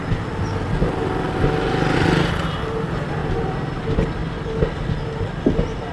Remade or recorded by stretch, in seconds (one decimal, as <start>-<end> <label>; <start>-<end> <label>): 0.0-3.2 recorded; 3.2-3.8 remade; 3.8-5.9 recorded